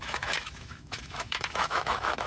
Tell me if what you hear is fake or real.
fake